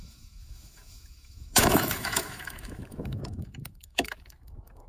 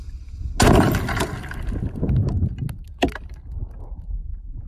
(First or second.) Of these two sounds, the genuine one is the second